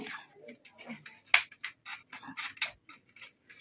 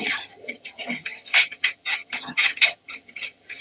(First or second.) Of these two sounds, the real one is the first